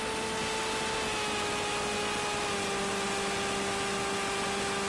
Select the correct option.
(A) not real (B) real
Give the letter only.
B